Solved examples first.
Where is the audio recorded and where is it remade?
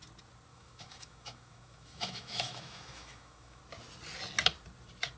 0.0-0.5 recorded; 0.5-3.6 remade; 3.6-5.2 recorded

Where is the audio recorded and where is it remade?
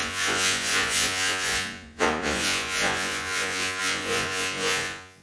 0.0-5.2 remade